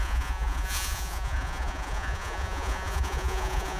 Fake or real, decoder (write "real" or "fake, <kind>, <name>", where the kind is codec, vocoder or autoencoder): fake, vocoder, Vocos